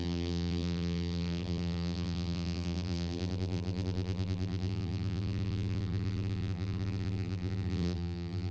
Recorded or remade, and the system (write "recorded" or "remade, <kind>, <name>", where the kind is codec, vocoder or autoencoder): remade, vocoder, BigVGAN v2